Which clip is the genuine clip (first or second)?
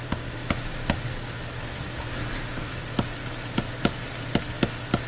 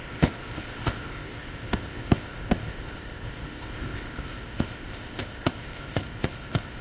first